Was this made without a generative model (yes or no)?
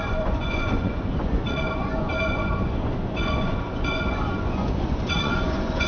no